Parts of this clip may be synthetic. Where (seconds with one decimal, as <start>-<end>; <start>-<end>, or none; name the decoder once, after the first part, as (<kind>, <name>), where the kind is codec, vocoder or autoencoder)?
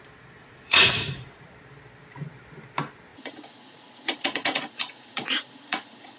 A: 0.4-1.5 (vocoder, Vocos); 3.1-6.2